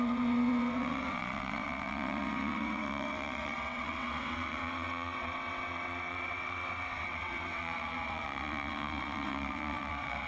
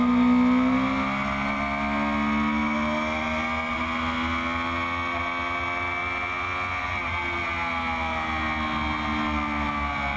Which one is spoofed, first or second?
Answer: first